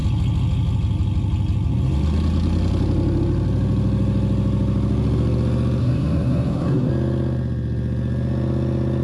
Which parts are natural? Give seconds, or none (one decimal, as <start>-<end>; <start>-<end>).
0.0-5.8; 6.9-9.0

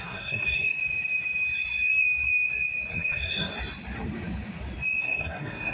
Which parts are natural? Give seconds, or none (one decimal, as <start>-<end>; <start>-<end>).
0.8-2.9; 3.5-5.0

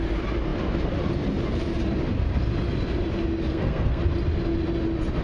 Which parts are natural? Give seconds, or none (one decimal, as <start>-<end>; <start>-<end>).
0.0-3.5; 4.0-5.2

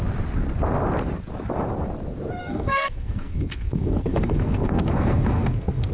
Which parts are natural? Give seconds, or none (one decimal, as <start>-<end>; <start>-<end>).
0.0-2.4

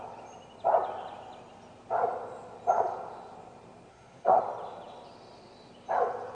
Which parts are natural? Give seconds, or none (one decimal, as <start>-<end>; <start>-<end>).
0.0-3.9; 4.4-6.3

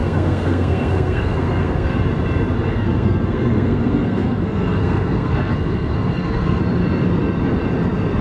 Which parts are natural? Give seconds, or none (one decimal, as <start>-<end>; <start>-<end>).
2.0-2.7; 6.6-8.2

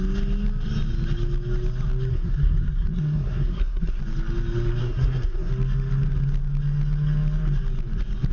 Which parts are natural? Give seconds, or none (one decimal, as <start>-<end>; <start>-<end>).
0.0-2.1; 4.0-4.8; 5.5-8.3

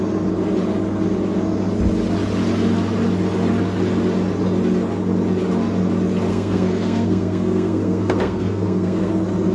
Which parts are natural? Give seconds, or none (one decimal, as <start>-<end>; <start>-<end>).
0.0-6.3; 9.1-9.5